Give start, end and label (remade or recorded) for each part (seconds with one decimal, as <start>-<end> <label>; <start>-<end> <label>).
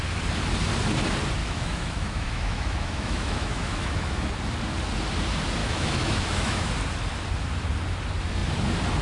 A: 0.0-1.4 recorded; 1.4-4.3 remade; 4.3-5.6 recorded; 5.6-6.7 remade; 6.7-9.0 recorded